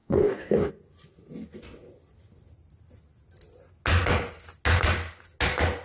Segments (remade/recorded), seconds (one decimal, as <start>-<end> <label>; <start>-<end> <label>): 0.0-0.7 remade; 0.7-5.8 recorded